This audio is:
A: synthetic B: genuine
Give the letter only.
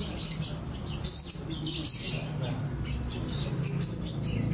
B